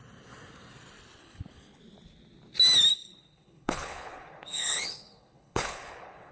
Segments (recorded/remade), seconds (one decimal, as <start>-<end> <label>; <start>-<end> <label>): 0.0-1.2 recorded; 1.2-1.8 remade; 1.8-3.0 recorded; 3.0-6.3 remade